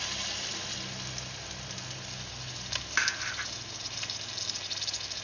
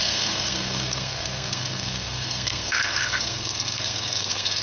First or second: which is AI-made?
second